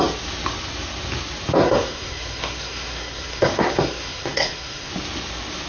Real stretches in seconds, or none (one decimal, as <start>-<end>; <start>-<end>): 0.0-1.6; 4.9-5.7